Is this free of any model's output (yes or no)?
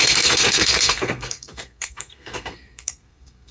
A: no